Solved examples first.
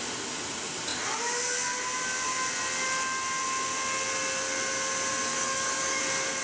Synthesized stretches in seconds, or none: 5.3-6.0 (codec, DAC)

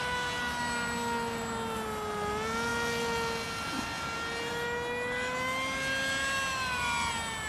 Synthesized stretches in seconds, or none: none

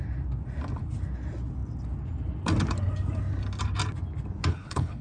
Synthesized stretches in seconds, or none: 4.5-5.0 (codec, HILCodec)

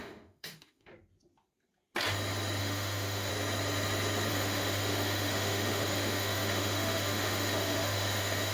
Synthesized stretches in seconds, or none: 0.0-0.9 (autoencoder, DAC-VAE); 2.6-3.3; 4.3-8.5

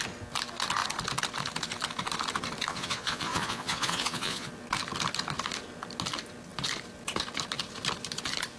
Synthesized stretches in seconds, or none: 2.7-4.5 (vocoder, Vocos)

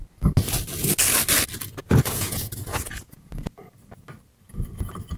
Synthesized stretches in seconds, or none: 1.8-3.3 (vocoder, Vocos)

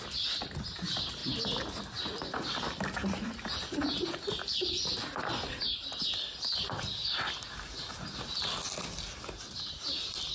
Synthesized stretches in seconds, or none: none